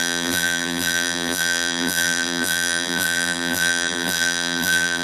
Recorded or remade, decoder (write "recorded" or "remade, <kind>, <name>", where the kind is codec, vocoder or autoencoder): remade, vocoder, BigVGAN v2